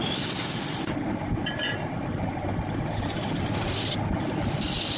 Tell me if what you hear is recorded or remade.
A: recorded